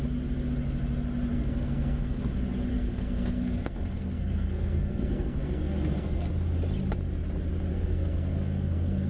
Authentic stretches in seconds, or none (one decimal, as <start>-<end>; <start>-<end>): 0.0-1.3; 2.2-2.7; 6.3-7.7